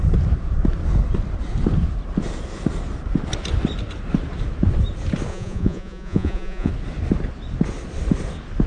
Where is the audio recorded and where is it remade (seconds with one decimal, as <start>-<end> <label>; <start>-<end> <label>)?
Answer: 0.0-5.3 recorded; 5.3-6.7 remade; 6.7-8.7 recorded